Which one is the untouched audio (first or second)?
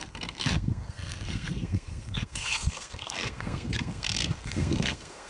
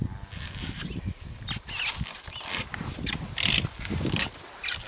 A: second